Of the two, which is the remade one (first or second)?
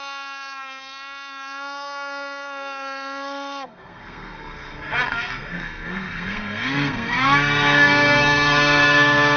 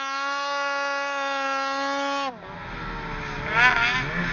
first